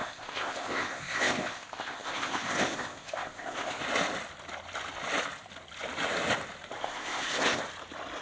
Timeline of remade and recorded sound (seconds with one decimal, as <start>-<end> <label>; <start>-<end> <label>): 0.0-3.8 remade; 3.8-6.8 recorded; 6.8-7.6 remade; 7.6-8.2 recorded